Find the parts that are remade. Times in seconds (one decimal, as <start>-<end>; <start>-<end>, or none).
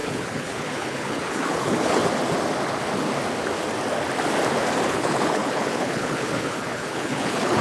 0.0-2.0; 4.9-7.6